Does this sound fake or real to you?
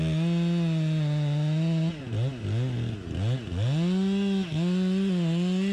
real